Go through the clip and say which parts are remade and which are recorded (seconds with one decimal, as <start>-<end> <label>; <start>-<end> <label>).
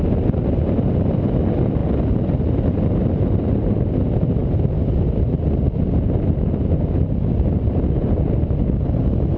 0.0-9.4 recorded